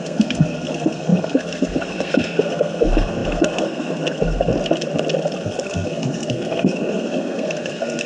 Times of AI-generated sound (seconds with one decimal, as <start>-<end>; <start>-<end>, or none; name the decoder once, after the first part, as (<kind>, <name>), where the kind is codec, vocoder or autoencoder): 0.0-4.5 (codec, SNAC); 5.4-8.1